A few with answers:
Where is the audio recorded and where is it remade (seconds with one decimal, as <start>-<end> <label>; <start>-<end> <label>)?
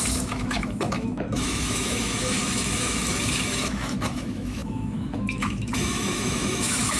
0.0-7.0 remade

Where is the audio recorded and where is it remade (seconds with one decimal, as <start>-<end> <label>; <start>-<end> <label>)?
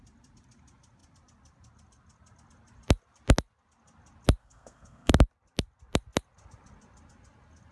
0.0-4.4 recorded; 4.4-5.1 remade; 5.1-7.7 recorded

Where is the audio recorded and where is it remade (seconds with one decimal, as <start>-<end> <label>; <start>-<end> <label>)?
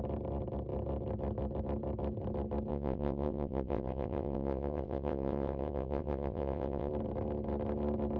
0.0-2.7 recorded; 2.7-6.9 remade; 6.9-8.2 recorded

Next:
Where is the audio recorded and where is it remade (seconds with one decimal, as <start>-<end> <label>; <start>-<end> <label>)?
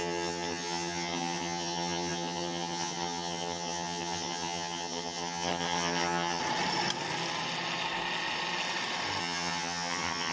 0.0-6.4 remade; 6.4-9.2 recorded; 9.2-10.3 remade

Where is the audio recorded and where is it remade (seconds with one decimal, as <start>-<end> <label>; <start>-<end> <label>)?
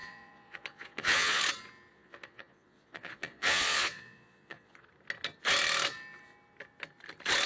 0.0-1.4 remade; 1.4-1.9 recorded; 1.9-4.9 remade; 4.9-7.5 recorded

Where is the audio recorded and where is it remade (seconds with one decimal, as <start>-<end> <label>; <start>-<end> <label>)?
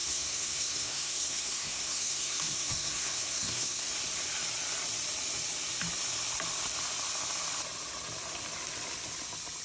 0.0-3.9 remade; 3.9-9.6 recorded